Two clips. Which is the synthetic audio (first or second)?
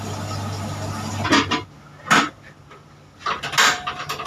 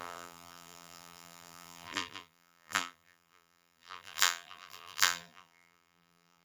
second